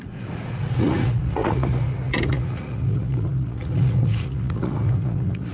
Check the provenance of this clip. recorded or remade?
remade